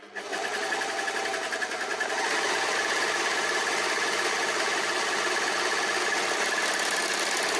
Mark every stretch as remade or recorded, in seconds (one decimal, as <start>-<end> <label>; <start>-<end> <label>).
0.0-7.6 recorded